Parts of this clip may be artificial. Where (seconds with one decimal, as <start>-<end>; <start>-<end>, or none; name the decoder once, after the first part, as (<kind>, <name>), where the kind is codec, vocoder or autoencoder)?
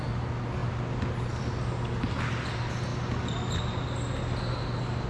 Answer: none